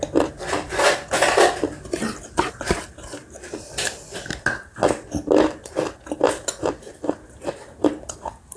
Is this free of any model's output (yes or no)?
yes